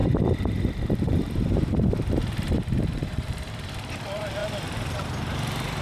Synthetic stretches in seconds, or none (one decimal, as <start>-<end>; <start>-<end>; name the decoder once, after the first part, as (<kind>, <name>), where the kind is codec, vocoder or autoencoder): 0.0-5.8 (vocoder, BigVGAN v2)